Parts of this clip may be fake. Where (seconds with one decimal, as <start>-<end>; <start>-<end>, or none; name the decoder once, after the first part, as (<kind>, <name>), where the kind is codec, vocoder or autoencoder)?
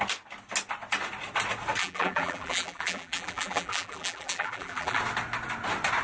1.8-5.0 (vocoder, BigVGAN v2)